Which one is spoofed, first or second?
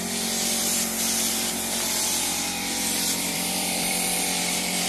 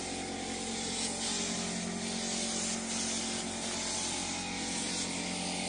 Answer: first